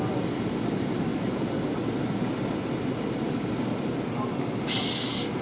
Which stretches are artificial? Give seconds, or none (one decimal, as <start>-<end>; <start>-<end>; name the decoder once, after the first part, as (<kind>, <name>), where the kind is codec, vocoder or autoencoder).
none